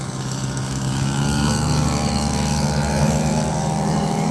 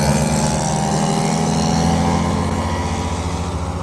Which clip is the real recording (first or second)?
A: second